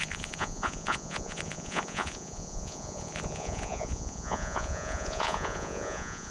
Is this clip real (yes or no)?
no